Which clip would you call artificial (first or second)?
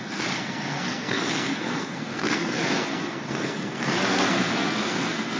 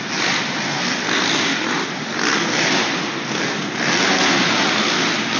first